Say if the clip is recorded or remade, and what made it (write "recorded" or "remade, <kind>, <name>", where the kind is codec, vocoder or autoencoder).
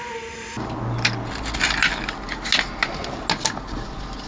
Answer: recorded